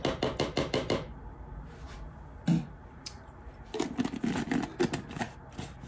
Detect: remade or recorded recorded